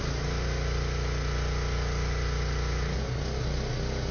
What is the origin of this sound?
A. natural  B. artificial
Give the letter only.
A